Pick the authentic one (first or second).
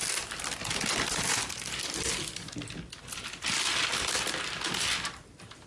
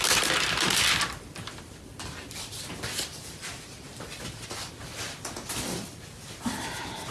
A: first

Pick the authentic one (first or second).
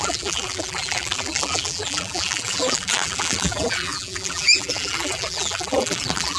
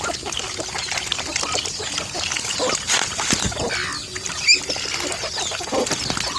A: second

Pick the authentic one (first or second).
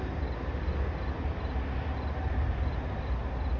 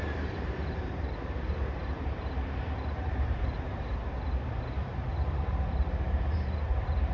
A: first